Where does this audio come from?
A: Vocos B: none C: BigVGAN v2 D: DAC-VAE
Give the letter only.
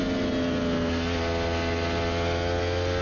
B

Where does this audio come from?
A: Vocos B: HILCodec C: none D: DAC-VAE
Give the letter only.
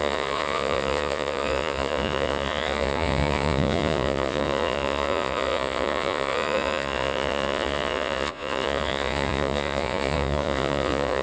A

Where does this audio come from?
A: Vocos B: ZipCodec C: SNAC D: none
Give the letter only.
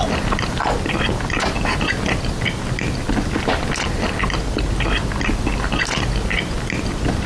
D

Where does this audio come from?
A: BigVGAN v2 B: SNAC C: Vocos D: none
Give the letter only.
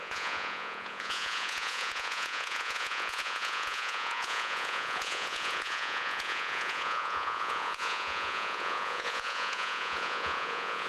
C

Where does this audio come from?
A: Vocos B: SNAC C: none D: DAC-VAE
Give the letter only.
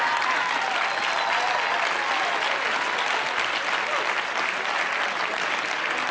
C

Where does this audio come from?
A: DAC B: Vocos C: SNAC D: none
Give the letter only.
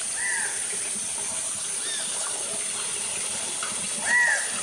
D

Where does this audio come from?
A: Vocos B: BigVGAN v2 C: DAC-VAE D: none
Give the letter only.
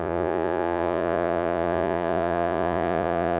A